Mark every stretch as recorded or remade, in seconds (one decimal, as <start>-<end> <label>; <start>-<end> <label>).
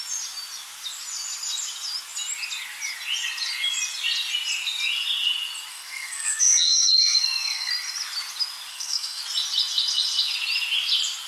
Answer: 0.0-5.7 recorded; 5.7-7.7 remade; 7.7-8.7 recorded; 8.7-9.2 remade; 9.2-11.3 recorded